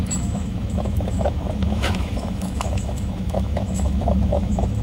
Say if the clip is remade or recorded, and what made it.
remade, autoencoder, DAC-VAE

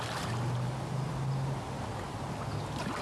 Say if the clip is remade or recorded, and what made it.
recorded